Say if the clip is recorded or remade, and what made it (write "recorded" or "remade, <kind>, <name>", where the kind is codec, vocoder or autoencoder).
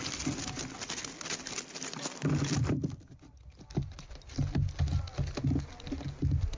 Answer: recorded